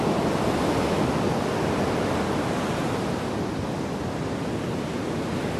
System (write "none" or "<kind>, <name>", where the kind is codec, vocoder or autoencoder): none